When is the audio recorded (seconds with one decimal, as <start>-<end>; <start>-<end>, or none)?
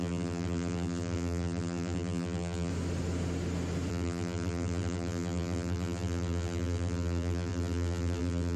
2.7-3.9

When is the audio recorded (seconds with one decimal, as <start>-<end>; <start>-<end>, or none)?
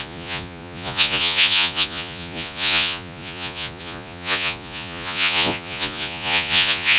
none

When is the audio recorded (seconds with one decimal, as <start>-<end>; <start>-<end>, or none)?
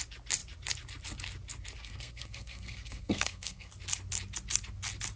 0.0-1.8; 3.7-5.2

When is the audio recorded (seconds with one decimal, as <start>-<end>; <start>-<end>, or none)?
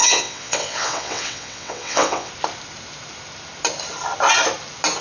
2.3-5.0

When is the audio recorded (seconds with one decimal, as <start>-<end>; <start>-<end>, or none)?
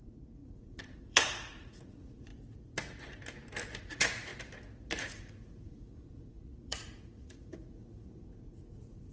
2.3-3.8; 4.3-5.1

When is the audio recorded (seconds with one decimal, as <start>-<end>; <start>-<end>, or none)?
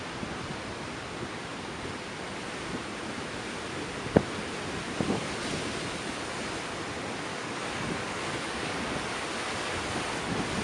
0.0-7.3; 8.8-10.6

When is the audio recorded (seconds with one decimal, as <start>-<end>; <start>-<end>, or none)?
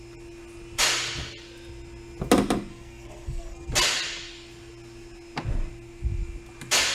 0.0-2.7; 3.7-6.9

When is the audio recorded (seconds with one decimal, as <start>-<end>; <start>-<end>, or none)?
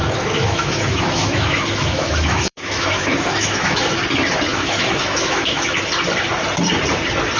3.8-4.5; 5.8-7.4